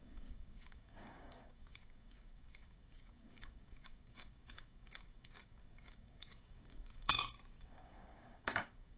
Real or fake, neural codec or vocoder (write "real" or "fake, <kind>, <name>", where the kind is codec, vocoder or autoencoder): fake, codec, DAC